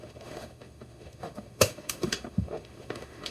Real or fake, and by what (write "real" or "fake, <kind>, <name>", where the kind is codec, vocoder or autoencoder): fake, autoencoder, DAC-VAE